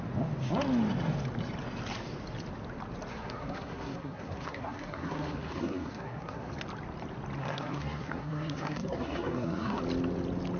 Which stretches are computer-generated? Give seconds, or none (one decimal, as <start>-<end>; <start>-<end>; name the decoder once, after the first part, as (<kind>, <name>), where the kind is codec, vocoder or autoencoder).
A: 3.1-6.5 (codec, SNAC); 7.4-9.8